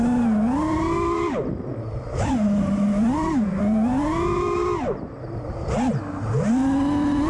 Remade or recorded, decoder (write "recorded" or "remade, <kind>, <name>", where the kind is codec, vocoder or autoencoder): recorded